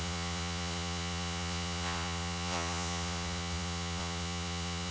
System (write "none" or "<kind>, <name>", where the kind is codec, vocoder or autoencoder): vocoder, Vocos